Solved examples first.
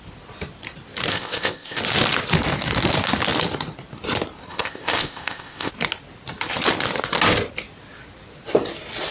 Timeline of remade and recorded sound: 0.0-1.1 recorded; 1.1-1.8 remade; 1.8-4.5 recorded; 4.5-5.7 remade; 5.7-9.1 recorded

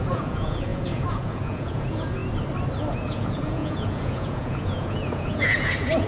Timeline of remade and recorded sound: 0.0-2.2 remade; 2.2-2.9 recorded; 2.9-6.1 remade

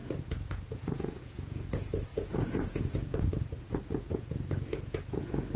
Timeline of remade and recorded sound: 0.0-5.6 remade

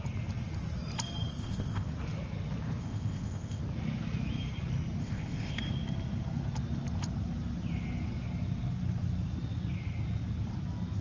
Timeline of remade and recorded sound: 0.0-1.3 recorded; 1.3-1.9 remade; 1.9-2.8 recorded; 2.8-3.6 remade; 3.6-5.0 recorded; 5.0-5.6 remade; 5.6-11.0 recorded

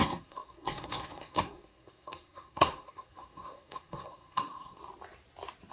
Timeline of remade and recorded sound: 0.0-4.8 remade; 4.8-5.7 recorded

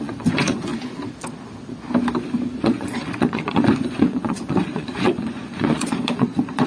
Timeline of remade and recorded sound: 0.0-0.7 remade; 0.7-2.6 recorded; 2.6-6.7 remade

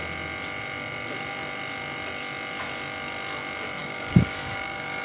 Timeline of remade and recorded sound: 0.0-3.8 recorded; 3.8-5.0 remade

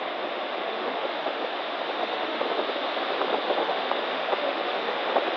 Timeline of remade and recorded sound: 0.0-0.6 recorded; 0.6-1.4 remade; 1.4-2.0 recorded; 2.0-2.5 remade; 2.5-3.6 recorded; 3.6-5.0 remade; 5.0-5.4 recorded